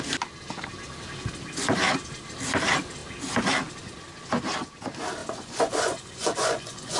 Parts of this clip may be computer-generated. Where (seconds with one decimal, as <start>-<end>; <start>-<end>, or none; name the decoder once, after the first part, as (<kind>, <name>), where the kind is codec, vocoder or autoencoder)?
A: 5.2-7.0 (vocoder, Vocos)